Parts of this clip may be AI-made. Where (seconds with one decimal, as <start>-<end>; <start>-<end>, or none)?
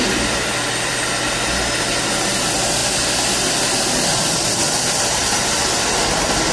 2.8-4.6